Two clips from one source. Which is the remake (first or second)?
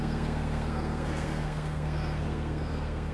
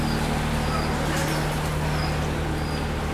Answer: first